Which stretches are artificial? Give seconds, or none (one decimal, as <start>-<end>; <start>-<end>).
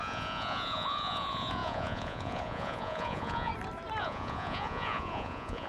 0.0-3.5; 4.0-5.7